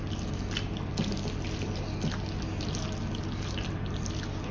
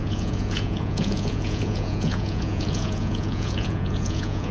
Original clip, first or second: first